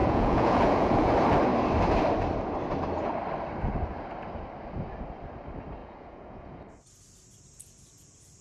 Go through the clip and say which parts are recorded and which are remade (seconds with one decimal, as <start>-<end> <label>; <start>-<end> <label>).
0.0-1.1 remade; 1.1-5.8 recorded; 5.8-6.6 remade; 6.6-8.4 recorded